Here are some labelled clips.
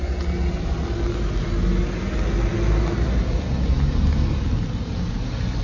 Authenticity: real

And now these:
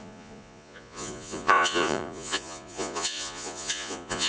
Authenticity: fake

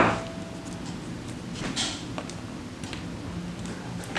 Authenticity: real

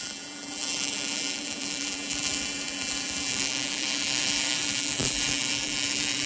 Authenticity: fake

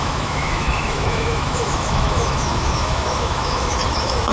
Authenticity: fake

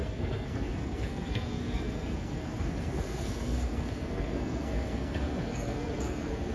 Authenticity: fake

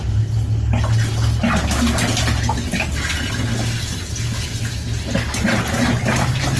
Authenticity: real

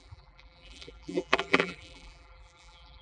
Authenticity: fake